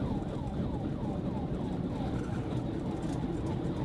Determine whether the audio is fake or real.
fake